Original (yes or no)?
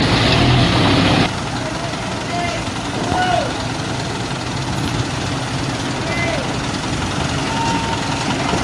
yes